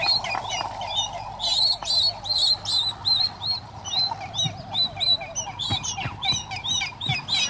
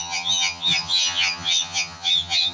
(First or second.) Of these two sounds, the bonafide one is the first